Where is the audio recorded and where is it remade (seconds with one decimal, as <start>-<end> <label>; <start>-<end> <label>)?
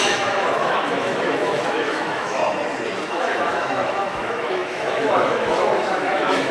0.0-2.4 remade; 2.4-3.1 recorded; 3.1-6.5 remade